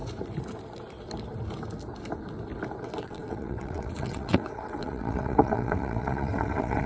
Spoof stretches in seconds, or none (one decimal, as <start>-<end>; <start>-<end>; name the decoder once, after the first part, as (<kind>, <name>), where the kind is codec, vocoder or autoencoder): 2.8-6.9 (vocoder, WaveNeXt)